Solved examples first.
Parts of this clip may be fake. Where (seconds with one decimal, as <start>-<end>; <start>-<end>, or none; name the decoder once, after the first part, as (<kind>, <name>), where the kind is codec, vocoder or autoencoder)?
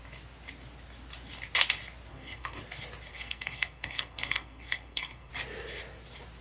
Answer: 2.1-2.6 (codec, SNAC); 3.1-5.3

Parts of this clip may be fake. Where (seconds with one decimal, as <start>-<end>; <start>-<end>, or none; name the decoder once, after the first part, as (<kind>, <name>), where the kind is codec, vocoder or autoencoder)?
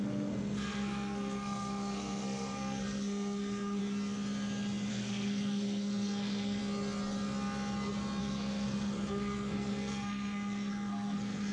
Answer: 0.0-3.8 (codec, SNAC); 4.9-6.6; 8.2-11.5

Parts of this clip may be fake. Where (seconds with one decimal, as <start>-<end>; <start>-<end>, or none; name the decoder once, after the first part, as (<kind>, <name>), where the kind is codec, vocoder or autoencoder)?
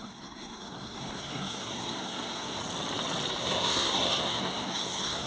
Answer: 0.0-2.6 (codec, SNAC); 3.4-5.3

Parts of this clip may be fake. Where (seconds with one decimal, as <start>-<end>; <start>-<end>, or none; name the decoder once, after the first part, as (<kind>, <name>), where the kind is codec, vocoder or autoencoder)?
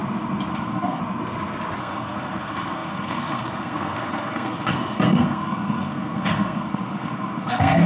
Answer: 0.5-1.0 (codec, SNAC); 1.8-7.9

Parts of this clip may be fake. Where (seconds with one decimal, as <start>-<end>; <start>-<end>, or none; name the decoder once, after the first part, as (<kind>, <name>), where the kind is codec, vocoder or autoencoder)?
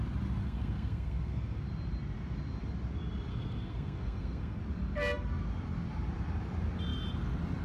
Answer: 0.4-1.6 (codec, SNAC); 3.3-4.6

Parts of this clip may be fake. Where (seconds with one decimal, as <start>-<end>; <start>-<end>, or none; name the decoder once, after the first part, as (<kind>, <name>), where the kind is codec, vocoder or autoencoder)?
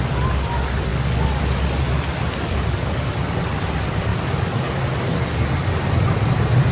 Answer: 0.0-0.9 (vocoder, BigVGAN v2); 1.4-4.1; 5.1-6.7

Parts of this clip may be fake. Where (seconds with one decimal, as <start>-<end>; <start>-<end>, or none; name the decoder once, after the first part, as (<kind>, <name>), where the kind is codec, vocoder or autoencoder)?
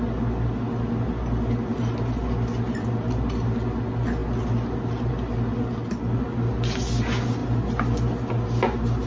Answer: none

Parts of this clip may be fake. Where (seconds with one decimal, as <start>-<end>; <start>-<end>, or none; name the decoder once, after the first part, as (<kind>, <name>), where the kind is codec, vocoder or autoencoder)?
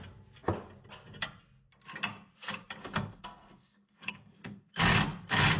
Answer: 2.8-4.7 (codec, SNAC)